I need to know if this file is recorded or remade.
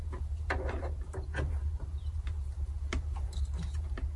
remade